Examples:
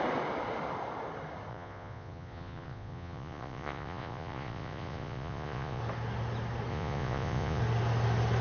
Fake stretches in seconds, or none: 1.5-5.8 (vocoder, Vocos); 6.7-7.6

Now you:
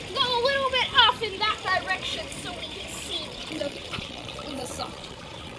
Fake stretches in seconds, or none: 3.3-5.6 (vocoder, Vocos)

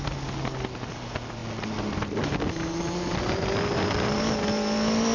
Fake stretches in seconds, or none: none

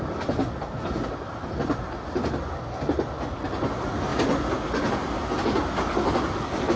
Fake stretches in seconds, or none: none

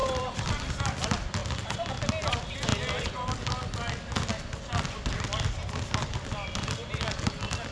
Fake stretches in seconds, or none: 0.0-0.6 (vocoder, BigVGAN v2)